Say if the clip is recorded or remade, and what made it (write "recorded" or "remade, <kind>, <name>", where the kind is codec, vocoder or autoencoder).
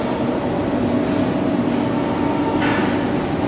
recorded